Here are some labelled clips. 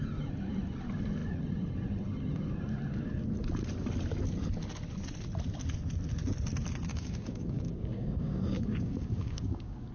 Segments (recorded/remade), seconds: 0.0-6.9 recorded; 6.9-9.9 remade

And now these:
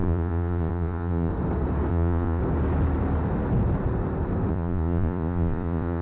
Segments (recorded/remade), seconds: 0.0-1.3 remade; 1.3-1.9 recorded; 1.9-2.4 remade; 2.4-4.5 recorded; 4.5-6.0 remade

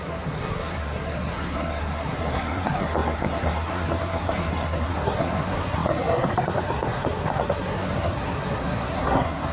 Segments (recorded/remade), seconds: 0.0-9.5 remade